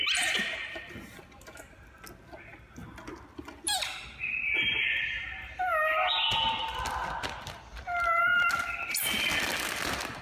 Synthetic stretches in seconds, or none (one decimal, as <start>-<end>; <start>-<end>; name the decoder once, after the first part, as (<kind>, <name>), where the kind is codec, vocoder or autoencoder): none